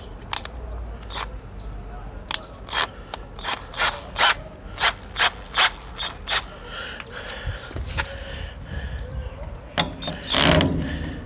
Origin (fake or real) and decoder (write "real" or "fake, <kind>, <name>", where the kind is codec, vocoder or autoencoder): real